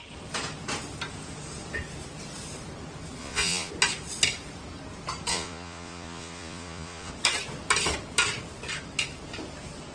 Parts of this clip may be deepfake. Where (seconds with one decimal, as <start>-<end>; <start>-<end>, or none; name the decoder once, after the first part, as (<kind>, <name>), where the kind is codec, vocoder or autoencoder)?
3.2-3.7 (vocoder, Vocos); 5.3-7.1